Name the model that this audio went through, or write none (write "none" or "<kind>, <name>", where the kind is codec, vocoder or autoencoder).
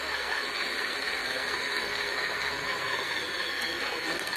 codec, SNAC